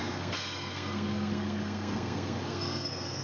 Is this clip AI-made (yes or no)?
yes